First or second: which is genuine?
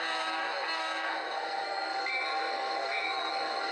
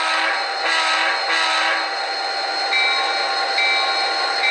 second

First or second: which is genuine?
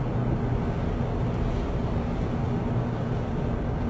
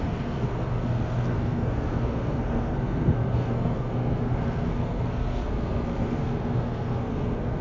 first